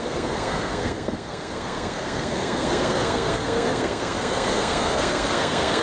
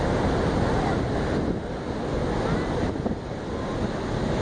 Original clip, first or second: second